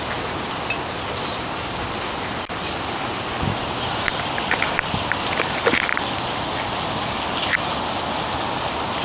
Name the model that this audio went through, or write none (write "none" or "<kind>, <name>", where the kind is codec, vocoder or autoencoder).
none